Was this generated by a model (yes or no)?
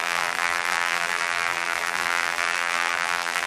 yes